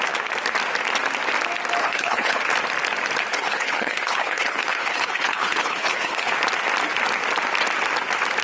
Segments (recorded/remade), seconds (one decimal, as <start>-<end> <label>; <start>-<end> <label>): 0.0-1.8 recorded; 1.8-2.4 remade; 2.4-3.3 recorded; 3.3-6.3 remade; 6.3-8.4 recorded